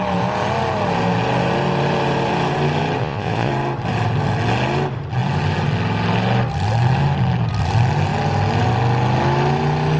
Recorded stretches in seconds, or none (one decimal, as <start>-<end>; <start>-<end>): 0.0-3.0; 3.5-10.0